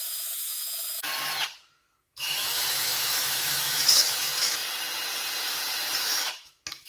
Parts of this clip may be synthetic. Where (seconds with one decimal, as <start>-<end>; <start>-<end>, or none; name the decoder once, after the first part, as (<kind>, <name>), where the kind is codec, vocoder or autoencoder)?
0.0-1.1 (autoencoder, DAC-VAE); 1.7-4.6; 6.0-6.9